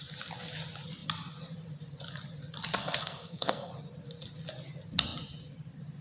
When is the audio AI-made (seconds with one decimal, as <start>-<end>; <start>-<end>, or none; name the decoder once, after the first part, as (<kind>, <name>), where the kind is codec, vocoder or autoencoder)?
2.8-3.7 (codec, SNAC)